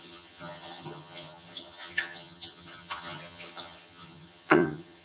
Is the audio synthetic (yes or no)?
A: yes